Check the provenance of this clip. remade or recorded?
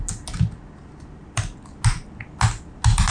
recorded